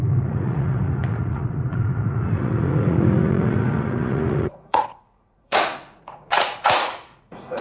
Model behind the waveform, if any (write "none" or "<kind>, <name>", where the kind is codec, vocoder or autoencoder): vocoder, Vocos